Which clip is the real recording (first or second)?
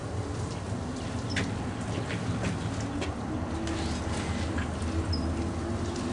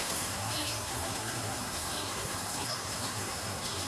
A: first